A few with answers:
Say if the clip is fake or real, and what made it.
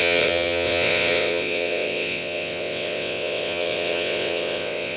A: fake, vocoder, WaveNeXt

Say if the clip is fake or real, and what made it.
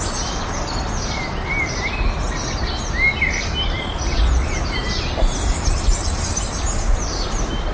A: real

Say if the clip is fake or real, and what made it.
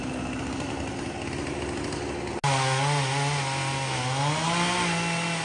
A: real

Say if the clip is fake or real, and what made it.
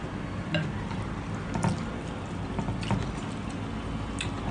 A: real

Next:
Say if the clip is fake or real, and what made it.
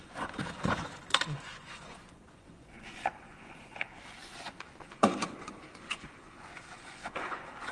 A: fake, vocoder, Vocos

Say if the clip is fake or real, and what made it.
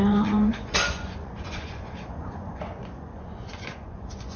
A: fake, vocoder, Vocos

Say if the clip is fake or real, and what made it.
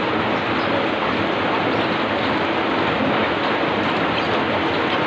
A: real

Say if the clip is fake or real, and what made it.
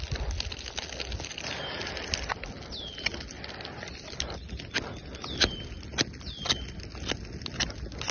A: real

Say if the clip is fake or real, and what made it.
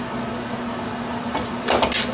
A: real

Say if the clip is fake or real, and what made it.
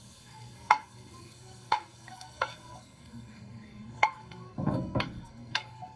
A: fake, codec, SNAC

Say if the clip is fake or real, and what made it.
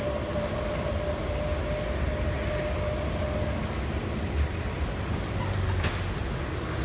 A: real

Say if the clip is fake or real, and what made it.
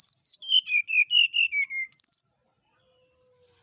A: real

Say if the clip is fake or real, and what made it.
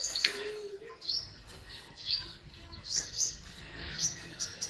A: fake, codec, SNAC